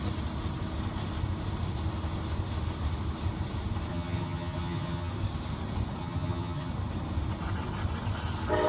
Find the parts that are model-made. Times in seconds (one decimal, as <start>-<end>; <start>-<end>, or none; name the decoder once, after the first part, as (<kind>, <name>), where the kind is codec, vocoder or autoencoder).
3.9-5.1 (vocoder, HiFi-GAN); 6.0-6.7